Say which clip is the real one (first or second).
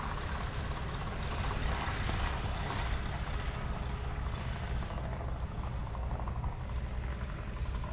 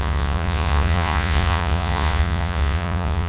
first